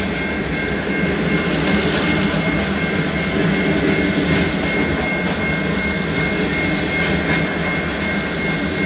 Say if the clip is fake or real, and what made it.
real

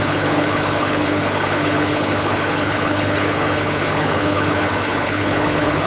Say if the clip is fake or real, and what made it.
fake, codec, HILCodec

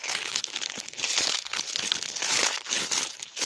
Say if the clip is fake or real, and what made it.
fake, codec, HILCodec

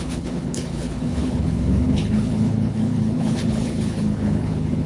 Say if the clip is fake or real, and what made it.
fake, codec, HILCodec